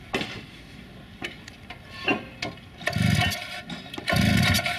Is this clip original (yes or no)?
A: yes